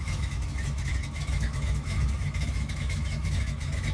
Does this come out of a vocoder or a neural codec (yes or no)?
yes